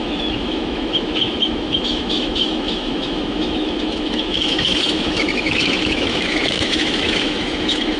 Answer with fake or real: fake